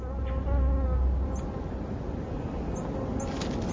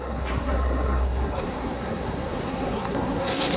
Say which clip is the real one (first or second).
first